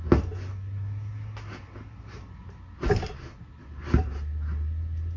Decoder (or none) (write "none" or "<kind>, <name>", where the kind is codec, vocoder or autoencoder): none